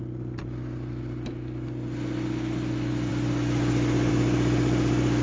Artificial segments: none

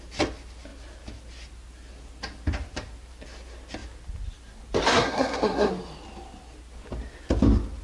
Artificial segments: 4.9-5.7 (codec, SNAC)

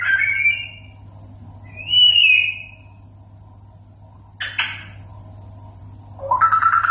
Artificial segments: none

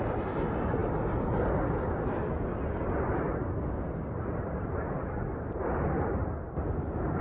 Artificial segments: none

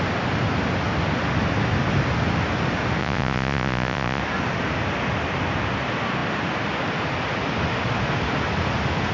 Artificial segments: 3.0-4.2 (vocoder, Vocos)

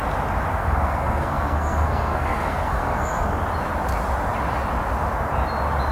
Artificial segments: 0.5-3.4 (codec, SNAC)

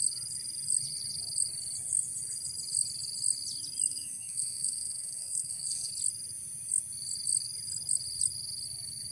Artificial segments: 3.9-5.9 (codec, SNAC)

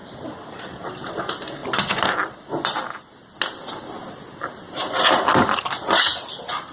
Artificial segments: none